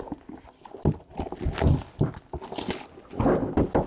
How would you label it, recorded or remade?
recorded